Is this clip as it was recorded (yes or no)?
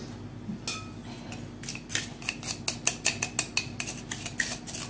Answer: yes